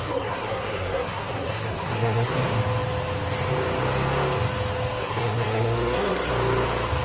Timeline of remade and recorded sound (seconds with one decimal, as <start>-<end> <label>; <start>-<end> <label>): 0.0-2.3 remade; 2.3-5.0 recorded; 5.0-6.3 remade; 6.3-7.0 recorded